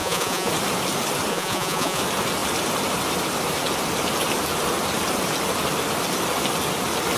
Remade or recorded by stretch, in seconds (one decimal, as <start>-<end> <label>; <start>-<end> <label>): 0.0-0.5 remade; 0.5-1.3 recorded; 1.3-2.0 remade; 2.0-7.2 recorded